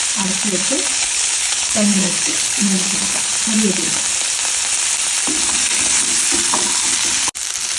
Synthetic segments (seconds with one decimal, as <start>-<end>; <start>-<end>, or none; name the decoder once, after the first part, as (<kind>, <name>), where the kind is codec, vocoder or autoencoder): 0.9-3.3 (codec, HILCodec)